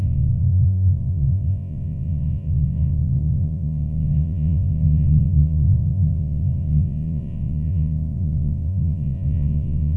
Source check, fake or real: fake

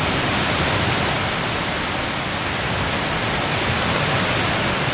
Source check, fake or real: real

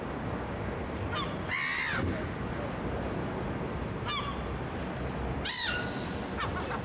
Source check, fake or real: real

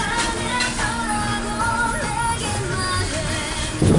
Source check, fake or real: real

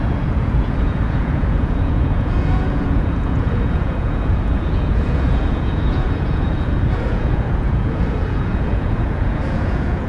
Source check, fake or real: fake